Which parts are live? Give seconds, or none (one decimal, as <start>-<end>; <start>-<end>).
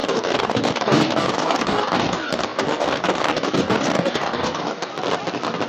4.9-5.7